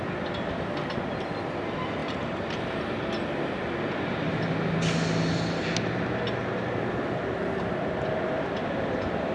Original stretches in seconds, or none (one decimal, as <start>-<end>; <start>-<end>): 0.0-9.3